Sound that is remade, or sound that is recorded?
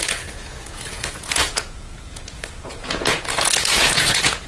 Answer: remade